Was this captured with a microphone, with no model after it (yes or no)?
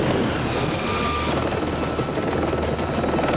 yes